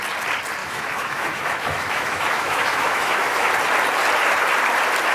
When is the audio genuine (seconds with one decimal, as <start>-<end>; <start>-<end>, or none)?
0.0-0.6; 3.5-5.1